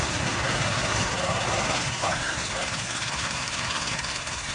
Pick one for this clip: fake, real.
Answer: fake